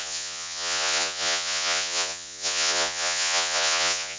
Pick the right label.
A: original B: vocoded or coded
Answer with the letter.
B